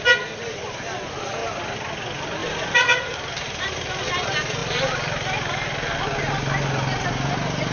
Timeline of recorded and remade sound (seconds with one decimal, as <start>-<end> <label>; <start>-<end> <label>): 0.0-2.4 recorded; 2.4-4.1 remade; 4.1-4.6 recorded; 4.6-6.0 remade; 6.0-7.7 recorded